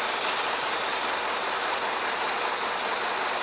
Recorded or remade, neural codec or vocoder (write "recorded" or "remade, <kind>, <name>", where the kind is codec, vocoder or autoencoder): recorded